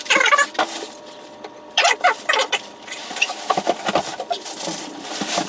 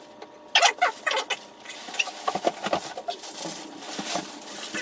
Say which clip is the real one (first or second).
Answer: second